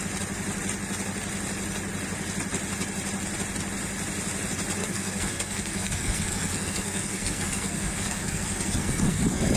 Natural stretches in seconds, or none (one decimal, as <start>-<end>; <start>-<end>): 0.0-4.8